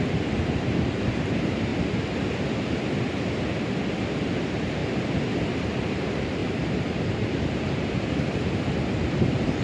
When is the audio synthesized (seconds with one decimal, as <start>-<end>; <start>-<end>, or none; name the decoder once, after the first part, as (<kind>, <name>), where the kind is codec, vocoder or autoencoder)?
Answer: 0.0-1.7 (vocoder, BigVGAN v2); 4.3-4.8; 5.8-6.4; 7.5-9.6